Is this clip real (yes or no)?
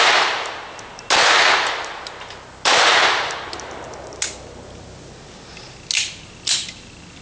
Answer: yes